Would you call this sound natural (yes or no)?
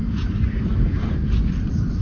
no